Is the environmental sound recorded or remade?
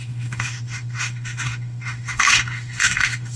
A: remade